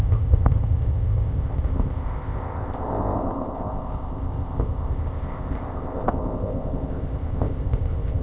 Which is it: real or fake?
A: fake